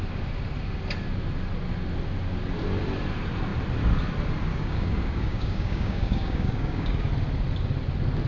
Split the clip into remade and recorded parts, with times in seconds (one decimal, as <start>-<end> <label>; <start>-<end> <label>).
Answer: 0.0-4.5 recorded; 4.5-7.1 remade; 7.1-8.3 recorded